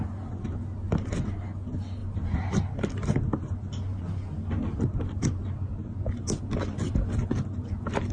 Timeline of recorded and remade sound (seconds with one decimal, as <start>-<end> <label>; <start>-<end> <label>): 0.0-8.1 recorded